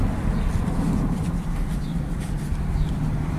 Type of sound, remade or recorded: recorded